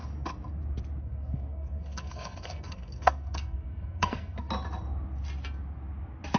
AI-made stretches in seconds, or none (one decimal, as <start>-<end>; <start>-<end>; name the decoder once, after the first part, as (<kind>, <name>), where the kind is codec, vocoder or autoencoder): 1.0-4.5 (codec, SNAC)

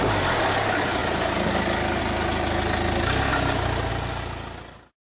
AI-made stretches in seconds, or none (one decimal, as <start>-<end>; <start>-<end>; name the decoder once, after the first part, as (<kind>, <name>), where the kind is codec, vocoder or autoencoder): none

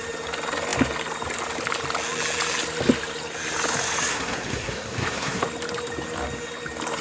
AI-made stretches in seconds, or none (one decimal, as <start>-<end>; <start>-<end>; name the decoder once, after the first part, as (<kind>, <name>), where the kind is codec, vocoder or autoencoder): 4.1-5.4 (codec, SNAC)

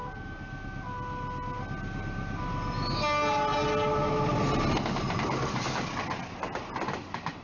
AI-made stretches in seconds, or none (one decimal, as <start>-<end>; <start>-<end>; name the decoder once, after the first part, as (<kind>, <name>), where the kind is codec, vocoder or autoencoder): none